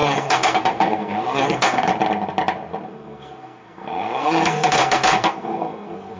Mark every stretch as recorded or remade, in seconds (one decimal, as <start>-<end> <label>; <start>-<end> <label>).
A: 0.0-1.9 remade; 1.9-2.9 recorded; 2.9-6.2 remade